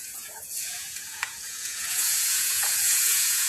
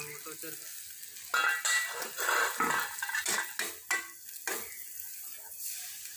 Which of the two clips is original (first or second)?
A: second